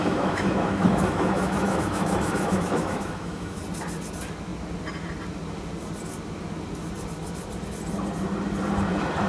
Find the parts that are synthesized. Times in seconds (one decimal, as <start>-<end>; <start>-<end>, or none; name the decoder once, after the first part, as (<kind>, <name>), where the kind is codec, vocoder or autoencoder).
0.0-3.6 (autoencoder, DAC-VAE)